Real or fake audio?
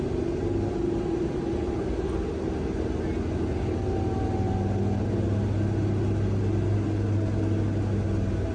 real